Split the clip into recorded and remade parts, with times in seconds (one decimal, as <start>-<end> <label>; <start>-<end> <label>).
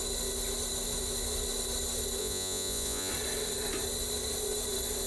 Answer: 0.0-2.2 recorded; 2.2-3.1 remade; 3.1-5.1 recorded